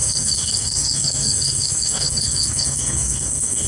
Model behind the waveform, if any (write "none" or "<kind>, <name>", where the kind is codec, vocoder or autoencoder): codec, SNAC